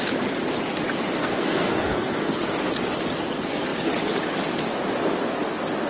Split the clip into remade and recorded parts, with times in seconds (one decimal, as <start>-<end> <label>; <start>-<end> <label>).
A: 0.0-1.2 recorded; 1.2-2.4 remade; 2.4-5.9 recorded